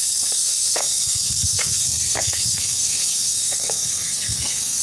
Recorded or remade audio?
remade